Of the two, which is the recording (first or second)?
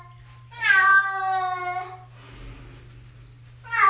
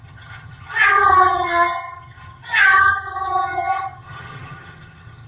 first